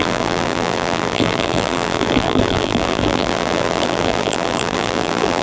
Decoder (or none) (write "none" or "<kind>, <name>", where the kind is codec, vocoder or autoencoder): vocoder, BigVGAN v2